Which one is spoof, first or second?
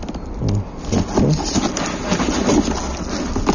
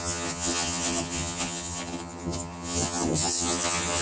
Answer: second